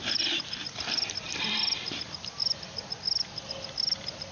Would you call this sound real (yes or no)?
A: no